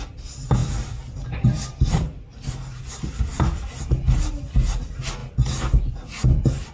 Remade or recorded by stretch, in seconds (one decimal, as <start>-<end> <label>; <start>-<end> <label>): 0.0-6.7 recorded